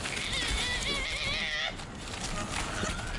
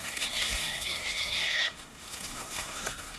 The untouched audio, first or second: first